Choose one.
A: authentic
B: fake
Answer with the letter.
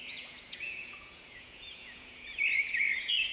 B